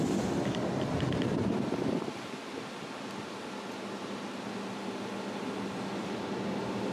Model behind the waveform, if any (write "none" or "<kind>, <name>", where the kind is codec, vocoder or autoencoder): none